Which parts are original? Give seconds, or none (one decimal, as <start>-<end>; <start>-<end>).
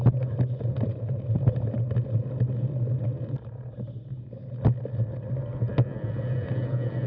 0.0-7.1